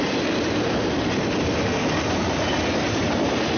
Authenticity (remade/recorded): recorded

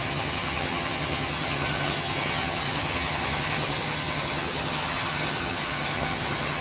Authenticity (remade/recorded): remade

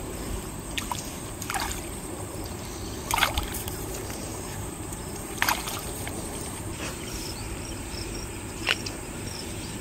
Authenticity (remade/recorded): remade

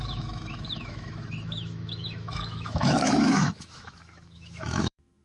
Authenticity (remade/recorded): remade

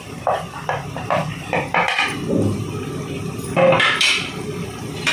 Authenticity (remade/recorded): remade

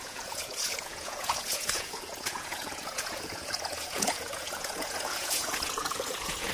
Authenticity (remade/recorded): remade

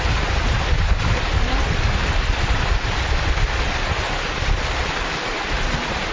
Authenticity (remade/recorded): recorded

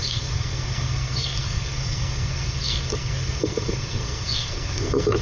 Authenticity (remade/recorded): remade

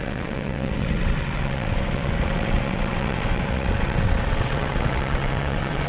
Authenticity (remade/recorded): remade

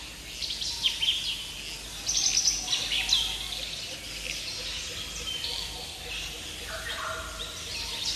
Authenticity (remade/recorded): recorded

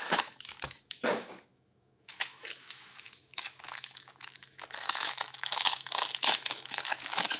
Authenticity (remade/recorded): remade